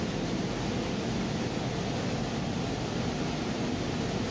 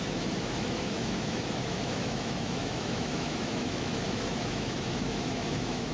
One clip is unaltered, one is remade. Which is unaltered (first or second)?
first